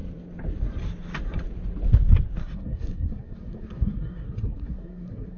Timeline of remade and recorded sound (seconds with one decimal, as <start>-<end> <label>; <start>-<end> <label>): 0.0-2.4 recorded; 2.4-5.4 remade